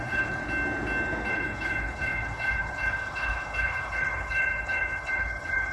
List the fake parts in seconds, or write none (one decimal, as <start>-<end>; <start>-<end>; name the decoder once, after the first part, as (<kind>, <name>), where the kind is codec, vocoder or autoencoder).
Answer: 0.0-0.4 (codec, HILCodec); 1.3-5.7